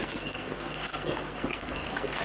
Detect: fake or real fake